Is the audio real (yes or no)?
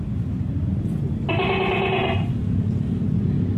yes